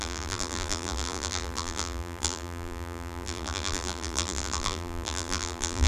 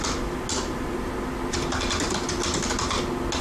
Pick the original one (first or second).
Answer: second